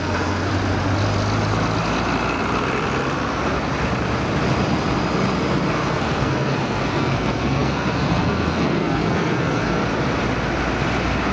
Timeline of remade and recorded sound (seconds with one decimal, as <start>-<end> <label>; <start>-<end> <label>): 0.0-0.5 remade; 0.5-5.7 recorded; 5.7-9.8 remade; 9.8-11.3 recorded